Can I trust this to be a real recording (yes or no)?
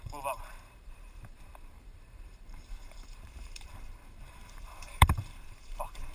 no